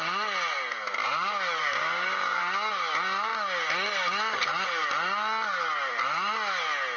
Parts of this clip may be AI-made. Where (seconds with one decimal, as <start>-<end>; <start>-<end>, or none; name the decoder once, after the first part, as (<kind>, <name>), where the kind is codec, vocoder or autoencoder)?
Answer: 1.6-2.4 (codec, DAC)

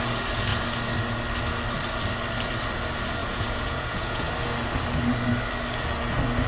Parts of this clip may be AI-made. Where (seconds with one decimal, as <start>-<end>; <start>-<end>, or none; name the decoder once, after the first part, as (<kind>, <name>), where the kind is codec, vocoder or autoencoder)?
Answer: 3.2-4.3 (vocoder, Vocos)

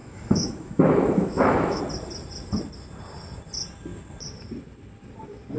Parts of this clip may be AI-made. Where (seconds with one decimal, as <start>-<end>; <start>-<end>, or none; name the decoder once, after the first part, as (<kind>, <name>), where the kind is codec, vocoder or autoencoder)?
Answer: 0.0-1.8 (autoencoder, DAC-VAE)